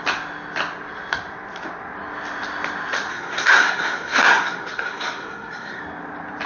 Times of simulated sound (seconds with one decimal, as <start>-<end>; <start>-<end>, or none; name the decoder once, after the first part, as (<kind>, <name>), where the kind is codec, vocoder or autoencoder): 3.1-5.8 (codec, SNAC)